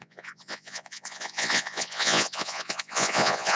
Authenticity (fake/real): fake